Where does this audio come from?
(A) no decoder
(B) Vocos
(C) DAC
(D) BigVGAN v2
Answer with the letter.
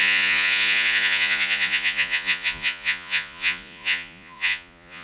B